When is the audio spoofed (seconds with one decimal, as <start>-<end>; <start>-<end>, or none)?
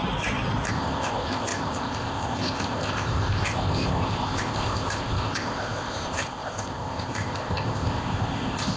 0.7-8.8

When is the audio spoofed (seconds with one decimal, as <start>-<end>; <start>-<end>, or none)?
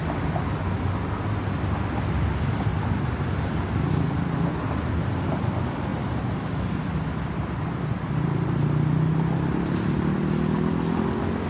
none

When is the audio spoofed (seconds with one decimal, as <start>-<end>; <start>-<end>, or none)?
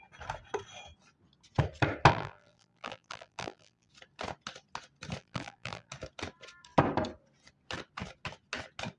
2.1-3.9; 5.2-5.9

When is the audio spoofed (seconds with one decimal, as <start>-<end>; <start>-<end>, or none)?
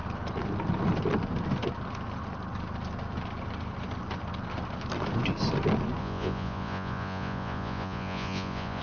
6.0-8.8